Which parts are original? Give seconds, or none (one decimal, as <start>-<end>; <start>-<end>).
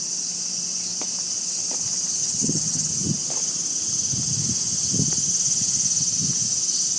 0.0-2.2; 2.9-7.0